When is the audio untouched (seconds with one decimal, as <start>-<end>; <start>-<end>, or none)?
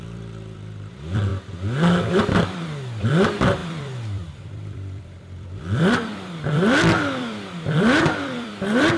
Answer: 1.3-2.1